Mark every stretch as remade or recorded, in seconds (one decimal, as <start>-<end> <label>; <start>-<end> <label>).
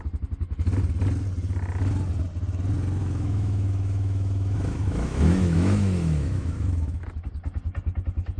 0.0-3.0 recorded; 3.0-7.3 remade; 7.3-8.4 recorded